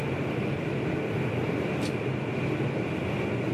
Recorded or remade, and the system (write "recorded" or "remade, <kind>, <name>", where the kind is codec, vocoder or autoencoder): recorded